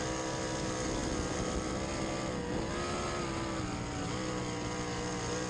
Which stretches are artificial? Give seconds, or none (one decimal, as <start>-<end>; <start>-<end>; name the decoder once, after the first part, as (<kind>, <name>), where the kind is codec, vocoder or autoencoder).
none